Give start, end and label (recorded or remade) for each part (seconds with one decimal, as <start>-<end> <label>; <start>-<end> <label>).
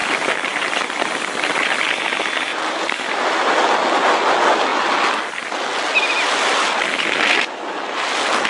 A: 0.0-0.7 remade; 0.7-2.5 recorded; 2.5-3.5 remade; 3.5-8.5 recorded